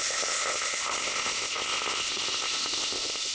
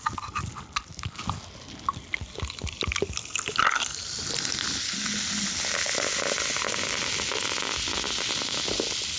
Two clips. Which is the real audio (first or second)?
second